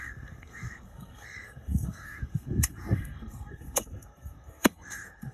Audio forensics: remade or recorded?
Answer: remade